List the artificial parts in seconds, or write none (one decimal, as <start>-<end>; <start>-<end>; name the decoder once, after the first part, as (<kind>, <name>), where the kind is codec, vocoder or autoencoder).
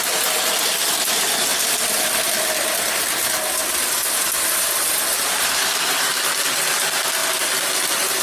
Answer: none